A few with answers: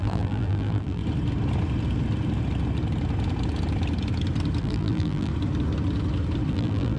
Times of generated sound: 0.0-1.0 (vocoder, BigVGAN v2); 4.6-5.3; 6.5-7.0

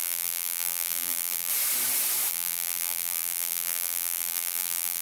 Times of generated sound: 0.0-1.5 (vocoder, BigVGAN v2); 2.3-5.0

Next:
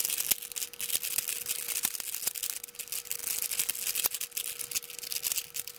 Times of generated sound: none

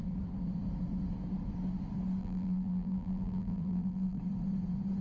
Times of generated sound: 2.2-4.2 (vocoder, BigVGAN v2)